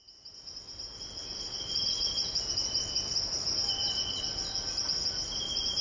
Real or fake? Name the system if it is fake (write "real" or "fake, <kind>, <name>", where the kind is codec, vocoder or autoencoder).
real